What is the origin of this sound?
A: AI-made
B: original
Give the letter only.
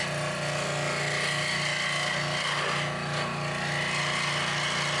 B